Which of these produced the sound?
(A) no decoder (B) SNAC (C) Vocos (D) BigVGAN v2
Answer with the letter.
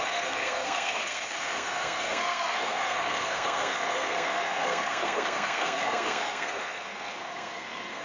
B